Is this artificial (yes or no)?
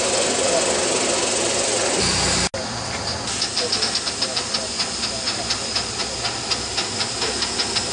no